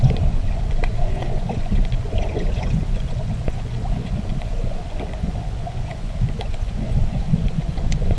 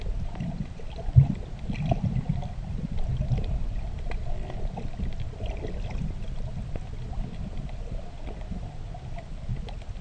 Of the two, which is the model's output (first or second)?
first